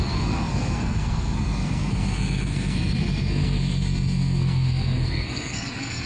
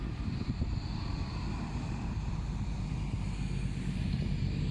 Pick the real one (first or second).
second